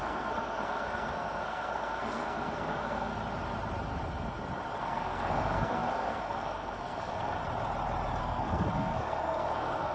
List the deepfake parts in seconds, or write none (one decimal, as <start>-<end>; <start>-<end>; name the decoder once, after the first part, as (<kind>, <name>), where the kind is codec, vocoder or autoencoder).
0.0-3.1 (codec, SNAC); 4.8-7.4; 8.2-9.9